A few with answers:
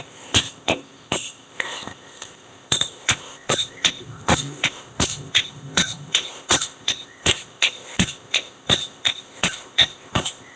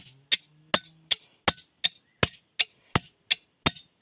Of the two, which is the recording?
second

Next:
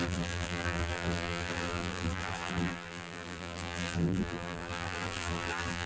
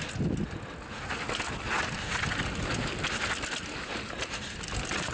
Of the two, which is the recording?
second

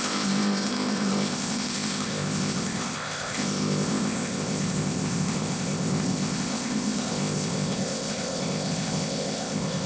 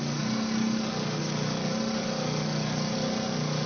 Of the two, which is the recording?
second